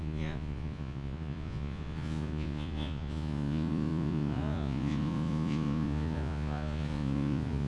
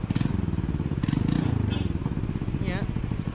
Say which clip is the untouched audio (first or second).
second